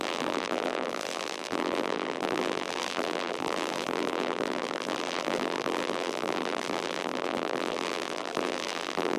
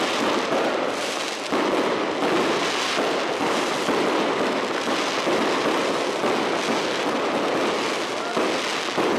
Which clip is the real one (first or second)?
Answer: second